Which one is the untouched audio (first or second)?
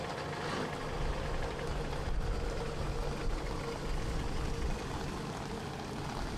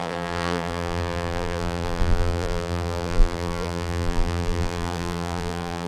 first